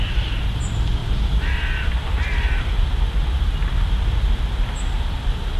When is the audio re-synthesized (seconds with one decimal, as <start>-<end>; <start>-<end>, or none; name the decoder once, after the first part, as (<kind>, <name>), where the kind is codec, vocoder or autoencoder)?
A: 1.0-2.8 (vocoder, BigVGAN v2)